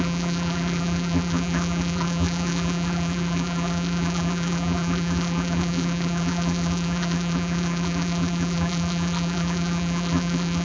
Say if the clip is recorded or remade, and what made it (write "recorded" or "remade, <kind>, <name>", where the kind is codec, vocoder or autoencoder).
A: remade, vocoder, BigVGAN v2